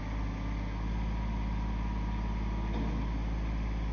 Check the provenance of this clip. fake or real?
real